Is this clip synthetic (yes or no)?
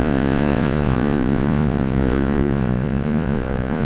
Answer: yes